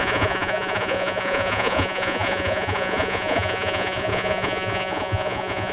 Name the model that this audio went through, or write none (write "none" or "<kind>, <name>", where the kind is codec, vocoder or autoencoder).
vocoder, Vocos